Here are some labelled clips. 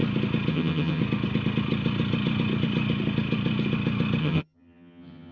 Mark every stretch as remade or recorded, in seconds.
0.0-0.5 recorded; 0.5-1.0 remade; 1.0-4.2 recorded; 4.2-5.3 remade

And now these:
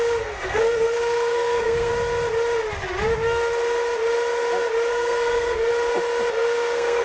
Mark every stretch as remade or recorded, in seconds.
0.0-1.9 remade; 1.9-4.9 recorded; 4.9-5.7 remade; 5.7-6.3 recorded; 6.3-7.0 remade

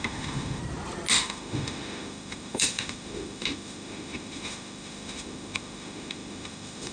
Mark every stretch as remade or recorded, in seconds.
0.0-0.6 remade; 0.6-1.1 recorded; 1.1-6.9 remade

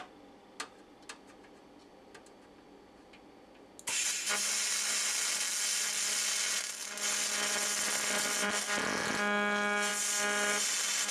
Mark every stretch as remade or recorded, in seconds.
0.0-11.1 recorded

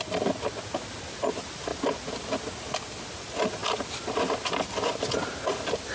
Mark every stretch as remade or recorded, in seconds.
0.0-5.9 recorded

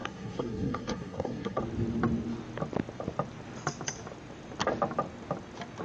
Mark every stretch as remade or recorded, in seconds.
0.0-1.6 remade; 1.6-5.8 recorded

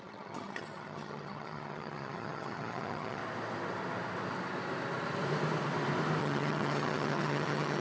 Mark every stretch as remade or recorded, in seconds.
0.0-3.2 remade; 3.2-6.2 recorded; 6.2-7.8 remade

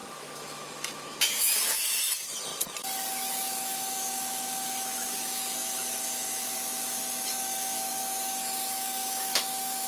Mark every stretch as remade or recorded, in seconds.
0.0-2.5 remade; 2.5-3.3 recorded; 3.3-9.9 remade